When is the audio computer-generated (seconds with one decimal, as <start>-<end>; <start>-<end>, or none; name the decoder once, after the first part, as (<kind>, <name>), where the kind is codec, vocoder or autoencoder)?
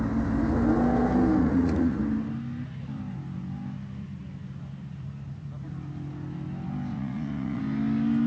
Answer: 1.4-2.0 (vocoder, Vocos); 6.9-7.6